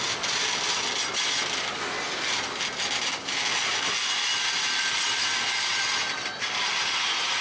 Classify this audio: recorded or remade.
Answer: remade